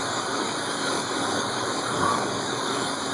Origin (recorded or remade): remade